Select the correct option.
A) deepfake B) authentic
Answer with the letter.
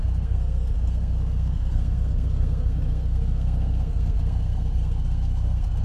A